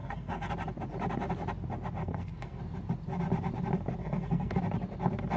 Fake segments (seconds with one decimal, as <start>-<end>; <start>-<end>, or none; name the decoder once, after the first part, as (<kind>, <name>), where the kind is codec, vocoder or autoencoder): 0.0-0.5 (codec, SNAC); 2.0-2.6; 4.0-4.6